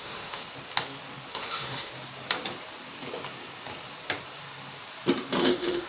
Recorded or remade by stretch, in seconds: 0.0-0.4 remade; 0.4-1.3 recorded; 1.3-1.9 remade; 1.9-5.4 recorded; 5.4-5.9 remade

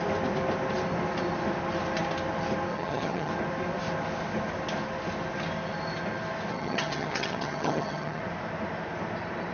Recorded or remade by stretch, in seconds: 0.0-2.7 recorded; 2.7-3.3 remade; 3.3-6.5 recorded; 6.5-8.2 remade; 8.2-9.5 recorded

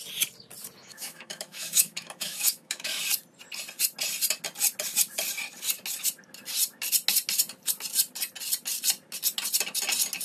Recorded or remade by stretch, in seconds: 0.0-0.8 recorded; 0.8-3.0 remade; 3.0-10.2 recorded

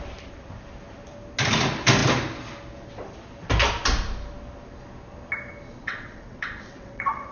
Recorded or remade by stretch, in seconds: 0.0-5.8 recorded; 5.8-7.3 remade